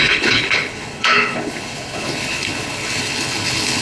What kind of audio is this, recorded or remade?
remade